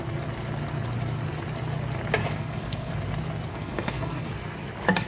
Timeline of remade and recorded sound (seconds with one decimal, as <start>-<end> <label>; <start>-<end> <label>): 0.0-2.2 recorded; 2.2-2.9 remade; 2.9-3.5 recorded; 3.5-4.3 remade; 4.3-5.1 recorded